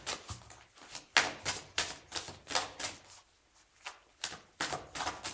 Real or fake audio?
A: real